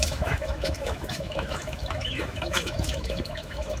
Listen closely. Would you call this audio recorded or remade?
remade